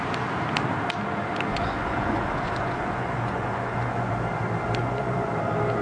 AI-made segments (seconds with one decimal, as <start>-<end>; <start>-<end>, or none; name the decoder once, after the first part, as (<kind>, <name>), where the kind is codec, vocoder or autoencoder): 1.5-4.1 (vocoder, Vocos); 4.8-5.3